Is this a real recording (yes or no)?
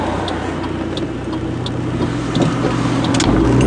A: yes